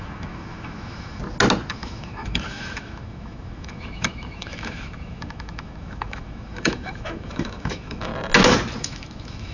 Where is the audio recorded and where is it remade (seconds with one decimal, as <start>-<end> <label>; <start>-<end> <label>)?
0.0-1.2 remade; 1.2-1.7 recorded; 1.7-8.1 remade; 8.1-8.8 recorded; 8.8-9.5 remade